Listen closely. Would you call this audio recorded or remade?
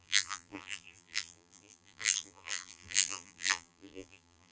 remade